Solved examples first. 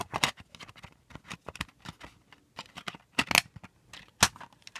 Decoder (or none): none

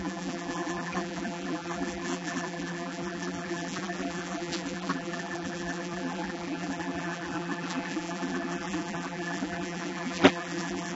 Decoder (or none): vocoder, BigVGAN v2